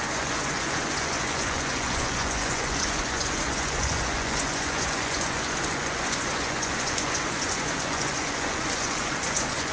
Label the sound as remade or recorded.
remade